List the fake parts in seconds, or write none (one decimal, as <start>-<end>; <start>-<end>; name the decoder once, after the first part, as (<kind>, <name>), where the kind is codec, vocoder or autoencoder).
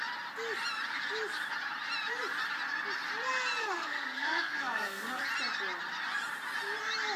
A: 3.6-5.2 (codec, SNAC)